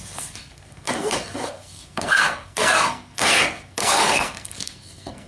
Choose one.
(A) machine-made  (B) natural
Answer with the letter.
A